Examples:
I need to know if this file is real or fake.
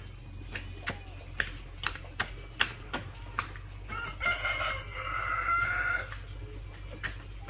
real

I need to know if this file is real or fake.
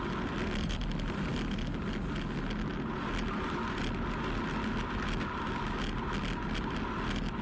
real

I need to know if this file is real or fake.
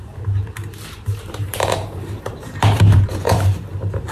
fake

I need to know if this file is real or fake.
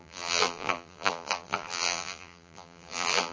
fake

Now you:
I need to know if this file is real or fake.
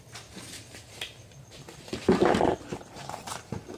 fake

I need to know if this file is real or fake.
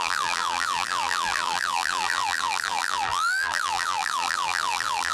fake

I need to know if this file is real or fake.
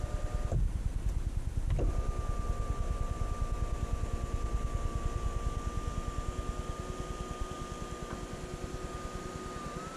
real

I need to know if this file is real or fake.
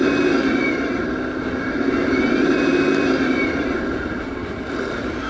fake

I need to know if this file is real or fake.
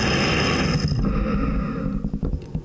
real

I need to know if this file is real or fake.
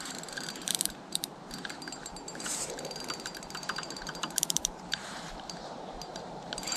fake